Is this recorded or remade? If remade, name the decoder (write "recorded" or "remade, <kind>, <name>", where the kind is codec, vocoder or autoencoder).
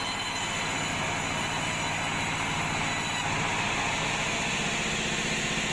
recorded